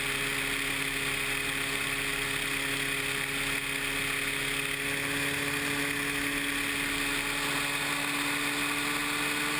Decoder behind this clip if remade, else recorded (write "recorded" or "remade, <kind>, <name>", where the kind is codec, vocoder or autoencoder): recorded